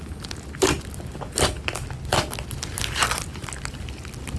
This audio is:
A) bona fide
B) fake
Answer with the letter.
A